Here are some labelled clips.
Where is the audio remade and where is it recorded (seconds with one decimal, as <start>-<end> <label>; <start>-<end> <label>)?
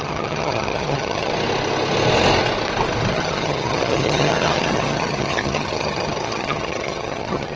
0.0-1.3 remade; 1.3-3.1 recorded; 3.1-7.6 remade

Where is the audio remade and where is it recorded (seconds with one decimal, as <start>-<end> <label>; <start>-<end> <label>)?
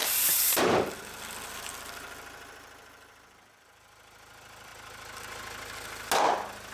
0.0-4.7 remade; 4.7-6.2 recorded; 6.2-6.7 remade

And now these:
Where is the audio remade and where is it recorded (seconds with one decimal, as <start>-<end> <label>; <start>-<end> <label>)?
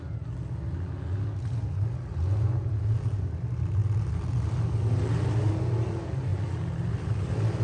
0.0-7.6 recorded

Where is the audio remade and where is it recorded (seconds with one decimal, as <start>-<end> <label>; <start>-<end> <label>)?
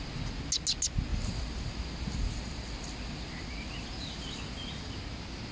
0.0-1.1 recorded; 1.1-4.4 remade; 4.4-5.5 recorded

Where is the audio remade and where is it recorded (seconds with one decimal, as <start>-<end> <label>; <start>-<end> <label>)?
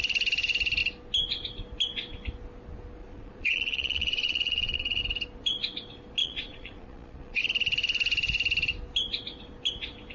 0.0-3.0 recorded; 3.0-5.0 remade; 5.0-6.2 recorded; 6.2-7.4 remade; 7.4-10.1 recorded